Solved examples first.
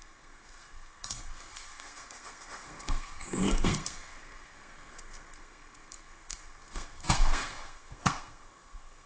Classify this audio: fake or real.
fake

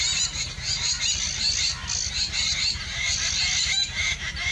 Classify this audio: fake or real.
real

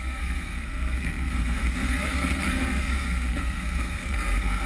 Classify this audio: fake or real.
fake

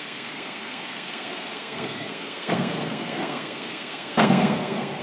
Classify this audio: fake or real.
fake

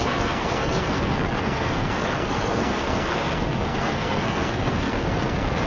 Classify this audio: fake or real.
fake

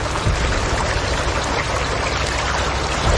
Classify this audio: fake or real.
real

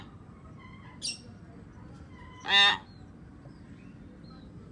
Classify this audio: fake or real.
real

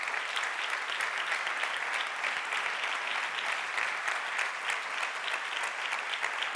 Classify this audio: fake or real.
real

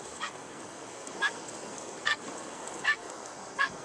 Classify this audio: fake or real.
fake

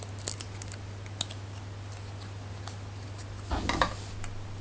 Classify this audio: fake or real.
real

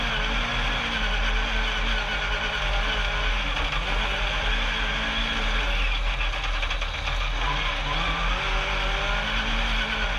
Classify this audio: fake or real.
real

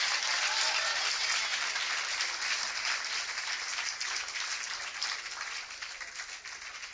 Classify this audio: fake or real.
real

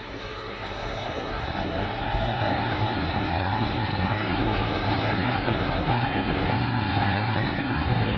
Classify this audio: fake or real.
fake